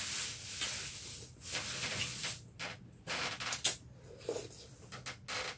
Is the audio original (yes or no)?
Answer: yes